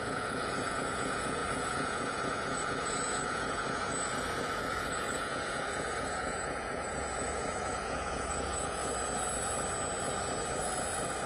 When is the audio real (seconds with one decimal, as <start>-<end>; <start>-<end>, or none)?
8.8-11.3